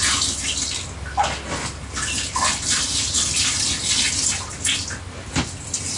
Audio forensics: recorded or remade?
recorded